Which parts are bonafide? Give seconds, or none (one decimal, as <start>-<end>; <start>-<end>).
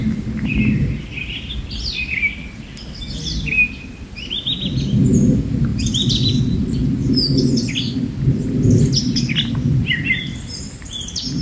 0.0-11.4